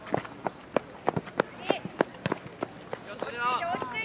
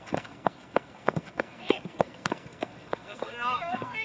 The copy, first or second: second